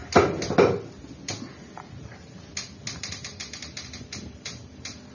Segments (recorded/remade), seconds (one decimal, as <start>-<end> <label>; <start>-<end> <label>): 0.0-1.9 recorded; 1.9-2.5 remade; 2.5-3.0 recorded; 3.0-3.4 remade; 3.4-4.4 recorded; 4.4-5.1 remade